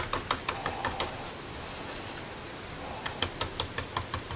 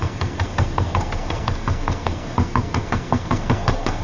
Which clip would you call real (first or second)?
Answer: first